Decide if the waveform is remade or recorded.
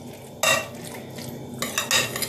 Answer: recorded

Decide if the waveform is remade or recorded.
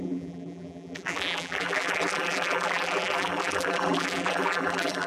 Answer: remade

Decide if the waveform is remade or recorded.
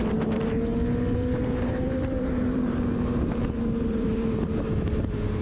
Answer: remade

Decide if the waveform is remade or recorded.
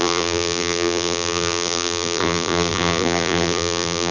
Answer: remade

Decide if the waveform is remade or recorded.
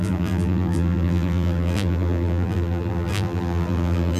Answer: remade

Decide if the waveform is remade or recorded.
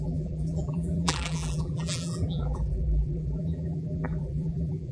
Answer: remade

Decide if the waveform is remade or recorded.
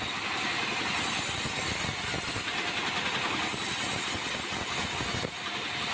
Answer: recorded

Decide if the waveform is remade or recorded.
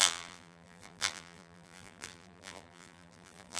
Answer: remade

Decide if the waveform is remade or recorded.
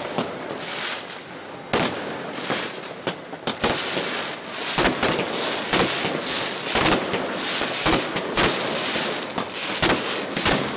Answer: recorded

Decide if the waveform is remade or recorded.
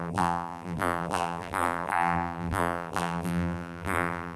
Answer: remade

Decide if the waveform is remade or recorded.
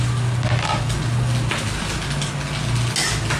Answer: recorded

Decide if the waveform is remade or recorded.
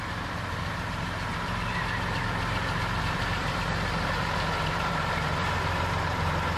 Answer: remade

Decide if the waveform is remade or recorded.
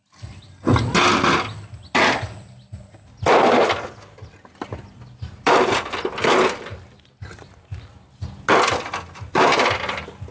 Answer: recorded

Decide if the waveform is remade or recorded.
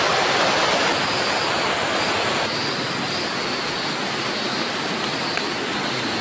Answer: recorded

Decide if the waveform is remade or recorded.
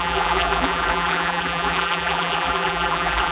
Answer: remade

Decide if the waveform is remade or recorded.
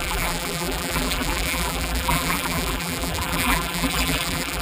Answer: remade